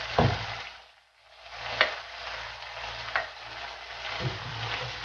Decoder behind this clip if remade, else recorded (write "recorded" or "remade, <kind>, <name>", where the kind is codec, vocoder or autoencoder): recorded